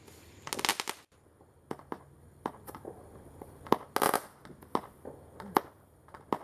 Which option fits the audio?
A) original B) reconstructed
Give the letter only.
A